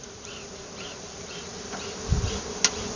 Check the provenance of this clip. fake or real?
real